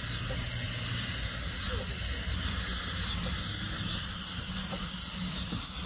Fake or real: real